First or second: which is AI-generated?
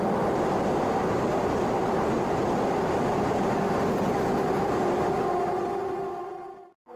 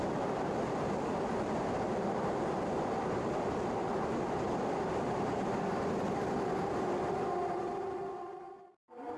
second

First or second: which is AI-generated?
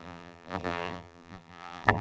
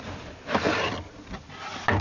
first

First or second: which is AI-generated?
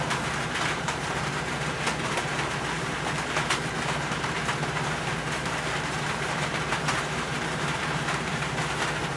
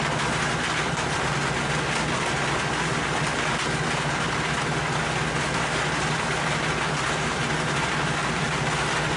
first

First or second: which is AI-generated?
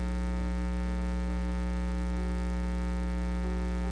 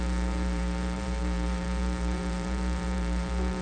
second